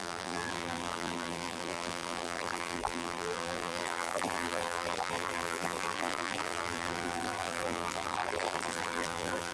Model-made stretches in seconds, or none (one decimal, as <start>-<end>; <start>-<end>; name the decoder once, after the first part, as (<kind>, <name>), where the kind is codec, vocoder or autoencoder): 0.0-9.5 (vocoder, BigVGAN v2)